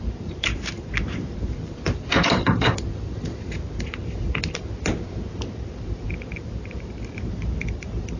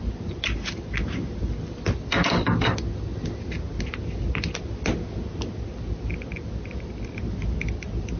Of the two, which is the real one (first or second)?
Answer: second